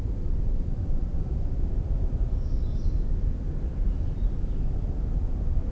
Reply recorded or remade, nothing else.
remade